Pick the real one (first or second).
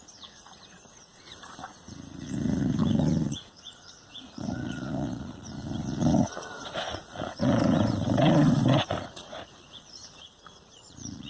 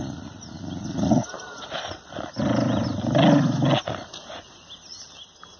second